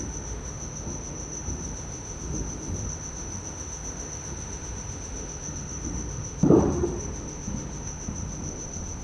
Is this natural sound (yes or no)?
no